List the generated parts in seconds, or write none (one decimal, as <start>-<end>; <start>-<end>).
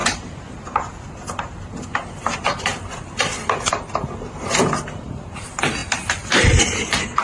4.3-5.8; 6.6-7.2